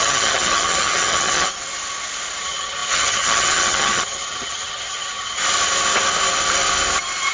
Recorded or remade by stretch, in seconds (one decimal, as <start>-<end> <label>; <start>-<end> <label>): 0.0-1.5 remade; 1.5-2.4 recorded; 2.4-5.4 remade; 5.4-7.3 recorded